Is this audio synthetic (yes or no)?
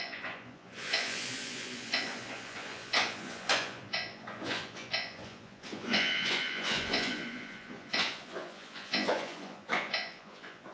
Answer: yes